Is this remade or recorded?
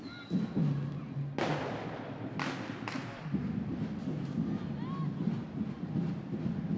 recorded